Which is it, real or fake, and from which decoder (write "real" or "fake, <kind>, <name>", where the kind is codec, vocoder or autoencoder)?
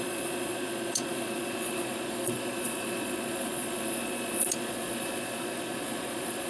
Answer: fake, vocoder, Vocos